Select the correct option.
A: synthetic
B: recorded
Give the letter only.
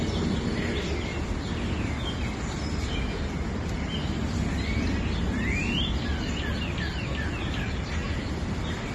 B